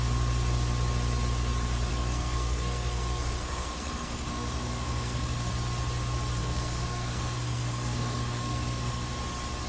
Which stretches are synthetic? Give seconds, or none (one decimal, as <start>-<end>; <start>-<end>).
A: 1.9-5.5; 6.4-9.1